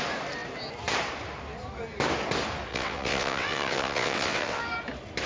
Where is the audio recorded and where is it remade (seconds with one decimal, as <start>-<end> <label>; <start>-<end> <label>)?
0.0-2.7 recorded; 2.7-4.6 remade; 4.6-5.3 recorded